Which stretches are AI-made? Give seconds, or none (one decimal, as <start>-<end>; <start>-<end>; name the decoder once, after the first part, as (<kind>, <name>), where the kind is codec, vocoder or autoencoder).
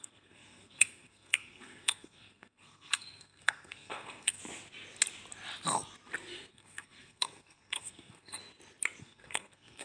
0.0-4.4 (codec, SNAC); 6.5-8.4; 9.0-9.8